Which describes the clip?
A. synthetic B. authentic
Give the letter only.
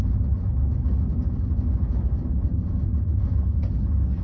B